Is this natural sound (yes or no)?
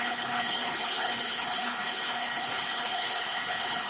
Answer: no